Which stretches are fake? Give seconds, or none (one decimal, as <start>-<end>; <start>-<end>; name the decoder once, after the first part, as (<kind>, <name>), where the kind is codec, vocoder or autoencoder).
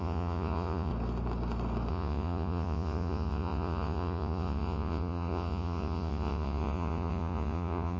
0.0-0.9 (vocoder, Vocos); 1.9-8.0